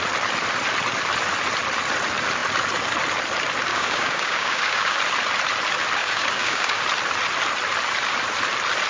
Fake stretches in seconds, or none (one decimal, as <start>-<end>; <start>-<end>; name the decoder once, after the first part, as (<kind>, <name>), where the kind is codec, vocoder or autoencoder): 3.7-5.0 (codec, DAC); 6.0-6.8